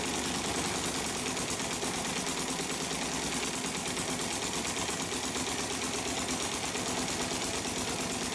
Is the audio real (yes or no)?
yes